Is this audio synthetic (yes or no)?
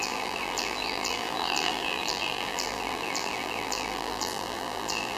yes